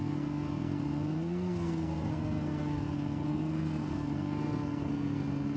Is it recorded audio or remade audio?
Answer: remade